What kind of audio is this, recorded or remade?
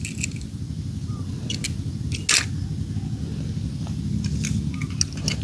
recorded